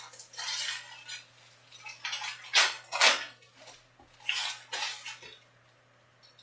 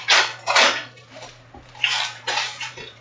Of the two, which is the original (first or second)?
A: first